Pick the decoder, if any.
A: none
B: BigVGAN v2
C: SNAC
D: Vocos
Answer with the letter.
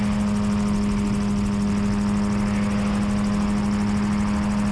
A